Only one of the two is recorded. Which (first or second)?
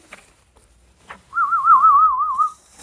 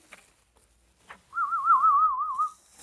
second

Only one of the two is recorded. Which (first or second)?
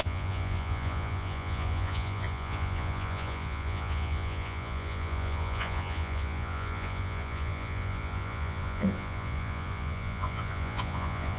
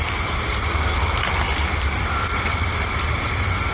second